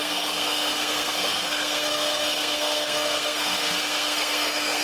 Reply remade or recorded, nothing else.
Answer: remade